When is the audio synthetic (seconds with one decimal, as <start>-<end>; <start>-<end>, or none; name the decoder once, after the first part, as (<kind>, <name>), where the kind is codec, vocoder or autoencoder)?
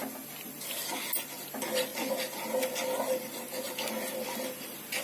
none